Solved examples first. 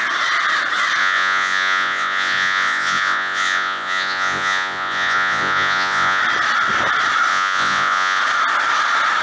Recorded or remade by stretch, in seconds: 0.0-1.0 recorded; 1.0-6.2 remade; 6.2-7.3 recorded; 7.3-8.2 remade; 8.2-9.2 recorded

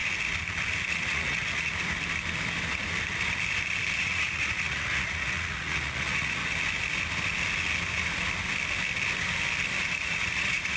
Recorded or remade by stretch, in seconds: 0.0-0.9 recorded; 0.9-1.7 remade; 1.7-4.0 recorded; 4.0-6.4 remade; 6.4-9.9 recorded; 9.9-10.8 remade

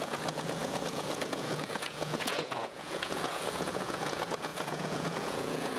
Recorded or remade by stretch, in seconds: 0.0-5.8 remade

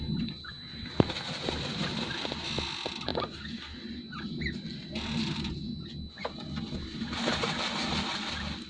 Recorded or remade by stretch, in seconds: 0.0-8.7 recorded

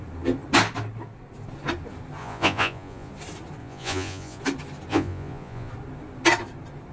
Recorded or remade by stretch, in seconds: 0.0-2.2 recorded; 2.2-3.1 remade; 3.1-3.6 recorded; 3.6-4.4 remade; 4.4-4.9 recorded; 4.9-5.7 remade; 5.7-6.9 recorded

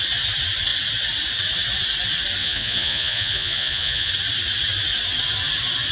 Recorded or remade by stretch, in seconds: 0.0-2.4 recorded; 2.4-4.1 remade; 4.1-5.9 recorded

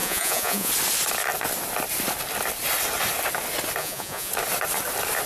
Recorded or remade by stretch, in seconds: 0.0-0.7 remade; 0.7-3.8 recorded; 3.8-4.3 remade; 4.3-5.3 recorded

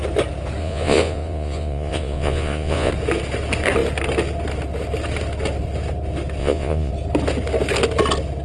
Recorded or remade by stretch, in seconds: 0.0-0.6 recorded; 0.6-2.9 remade; 2.9-6.4 recorded; 6.4-6.9 remade; 6.9-8.4 recorded